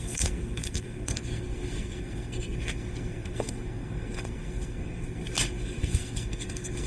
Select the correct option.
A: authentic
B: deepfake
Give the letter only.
B